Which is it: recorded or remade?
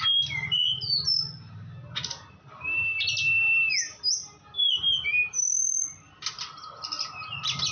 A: recorded